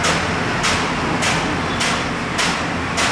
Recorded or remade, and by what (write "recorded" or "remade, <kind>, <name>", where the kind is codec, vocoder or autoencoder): recorded